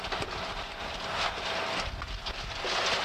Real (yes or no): yes